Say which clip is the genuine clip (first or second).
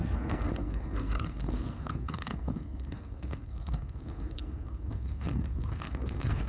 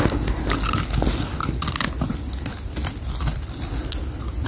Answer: second